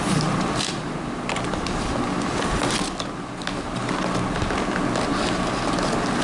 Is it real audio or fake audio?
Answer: real